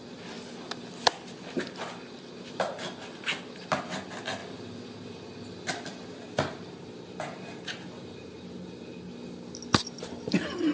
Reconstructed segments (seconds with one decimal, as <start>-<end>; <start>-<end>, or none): none